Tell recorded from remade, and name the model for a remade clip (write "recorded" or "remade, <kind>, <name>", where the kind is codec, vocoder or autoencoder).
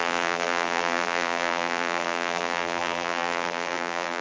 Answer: remade, vocoder, BigVGAN v2